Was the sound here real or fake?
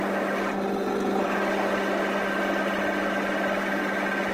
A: real